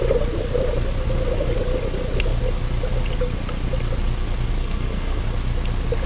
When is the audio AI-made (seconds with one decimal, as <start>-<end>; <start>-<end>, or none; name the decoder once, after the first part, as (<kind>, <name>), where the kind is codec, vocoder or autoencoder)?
4.6-5.2 (codec, SNAC)